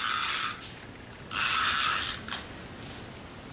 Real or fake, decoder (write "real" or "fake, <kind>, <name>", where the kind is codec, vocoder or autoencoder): real